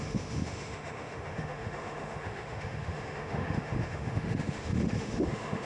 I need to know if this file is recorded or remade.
remade